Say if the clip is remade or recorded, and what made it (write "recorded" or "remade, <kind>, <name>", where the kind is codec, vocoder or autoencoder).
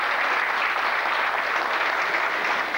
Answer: recorded